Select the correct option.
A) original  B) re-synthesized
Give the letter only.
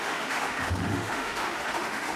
B